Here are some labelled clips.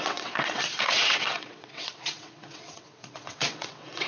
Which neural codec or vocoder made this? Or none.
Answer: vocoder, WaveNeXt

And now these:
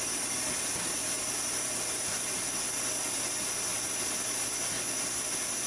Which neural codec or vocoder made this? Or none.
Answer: none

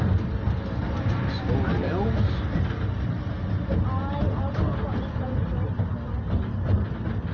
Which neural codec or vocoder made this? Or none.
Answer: none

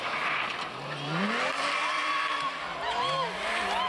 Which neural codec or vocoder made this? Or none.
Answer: none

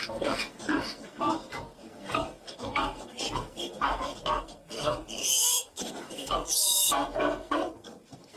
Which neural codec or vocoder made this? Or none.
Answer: codec, SNAC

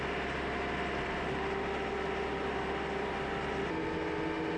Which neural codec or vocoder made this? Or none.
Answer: none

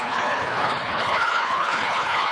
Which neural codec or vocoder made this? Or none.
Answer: codec, HILCodec